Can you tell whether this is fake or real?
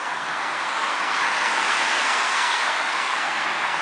fake